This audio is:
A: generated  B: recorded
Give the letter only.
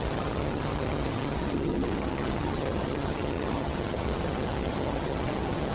A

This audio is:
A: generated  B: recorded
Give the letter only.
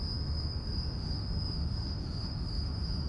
A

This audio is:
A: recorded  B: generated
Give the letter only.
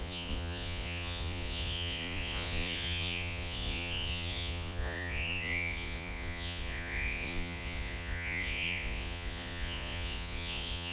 B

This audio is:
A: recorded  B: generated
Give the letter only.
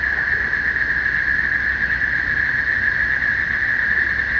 A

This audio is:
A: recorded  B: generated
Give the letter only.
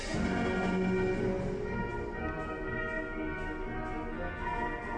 A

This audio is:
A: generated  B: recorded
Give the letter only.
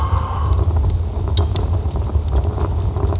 B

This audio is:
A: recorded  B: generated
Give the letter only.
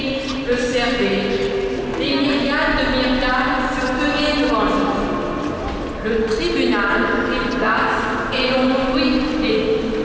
A